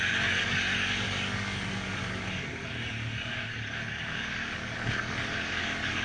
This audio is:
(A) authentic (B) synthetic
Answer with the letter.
B